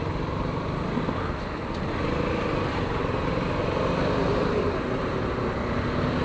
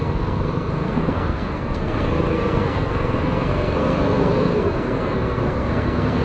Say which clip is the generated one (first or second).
second